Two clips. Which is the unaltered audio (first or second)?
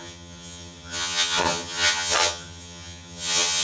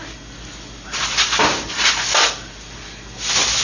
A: second